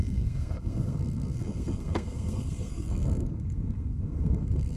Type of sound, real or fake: fake